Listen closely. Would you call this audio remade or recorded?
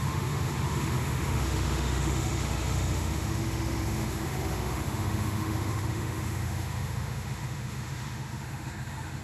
remade